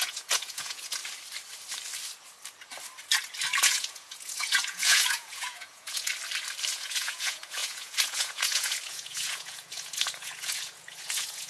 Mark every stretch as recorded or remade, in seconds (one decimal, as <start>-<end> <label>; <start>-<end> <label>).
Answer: 0.0-1.0 remade; 1.0-3.6 recorded; 3.6-6.1 remade; 6.1-6.7 recorded; 6.7-11.5 remade